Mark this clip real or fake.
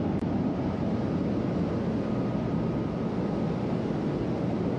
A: real